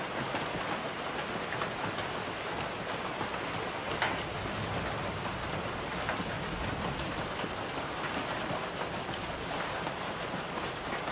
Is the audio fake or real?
real